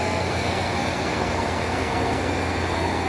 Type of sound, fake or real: fake